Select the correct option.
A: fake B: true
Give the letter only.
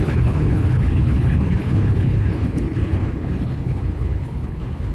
A